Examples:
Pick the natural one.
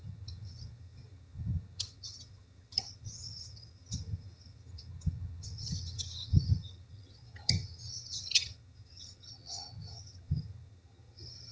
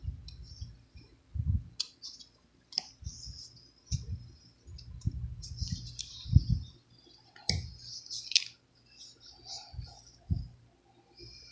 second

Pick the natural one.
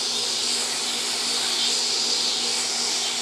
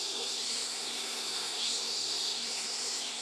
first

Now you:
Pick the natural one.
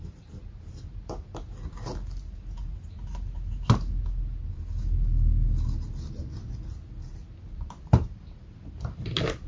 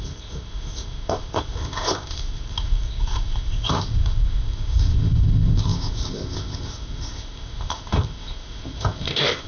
first